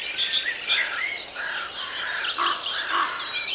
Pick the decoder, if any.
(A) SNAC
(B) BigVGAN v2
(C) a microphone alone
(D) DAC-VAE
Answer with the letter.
B